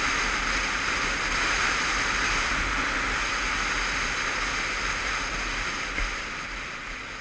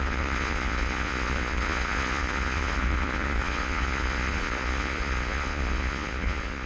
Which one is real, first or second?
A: first